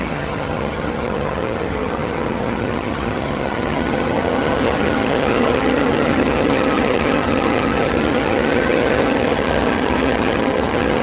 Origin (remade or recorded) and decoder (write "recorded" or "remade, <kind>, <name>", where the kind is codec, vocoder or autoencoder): remade, vocoder, HiFi-GAN